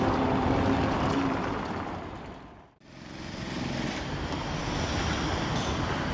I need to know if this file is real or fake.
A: real